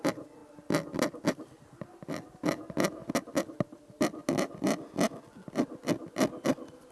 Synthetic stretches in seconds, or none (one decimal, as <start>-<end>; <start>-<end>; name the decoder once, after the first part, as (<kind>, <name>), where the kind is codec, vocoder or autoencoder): none